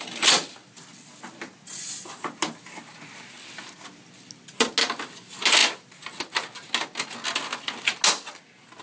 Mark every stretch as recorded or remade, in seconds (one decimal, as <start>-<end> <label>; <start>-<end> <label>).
0.0-8.8 recorded